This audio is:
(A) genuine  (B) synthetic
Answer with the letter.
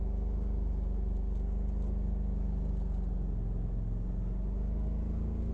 A